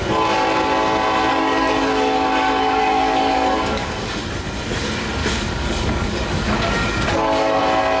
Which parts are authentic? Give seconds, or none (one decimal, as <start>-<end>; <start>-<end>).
0.0-1.3; 4.2-5.2; 7.6-8.0